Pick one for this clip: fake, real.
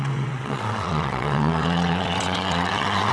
fake